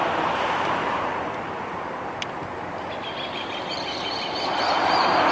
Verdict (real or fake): fake